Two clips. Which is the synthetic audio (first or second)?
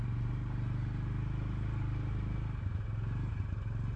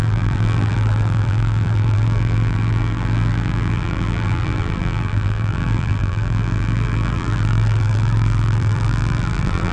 second